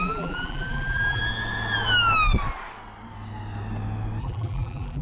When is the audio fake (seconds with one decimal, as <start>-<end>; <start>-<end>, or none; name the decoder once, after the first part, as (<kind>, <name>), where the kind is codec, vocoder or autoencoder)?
0.0-1.2 (vocoder, BigVGAN v2); 4.2-5.0